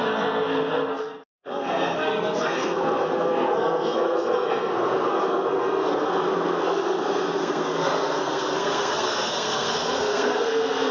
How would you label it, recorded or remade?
remade